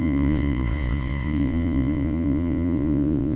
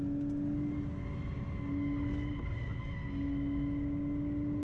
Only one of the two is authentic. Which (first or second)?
second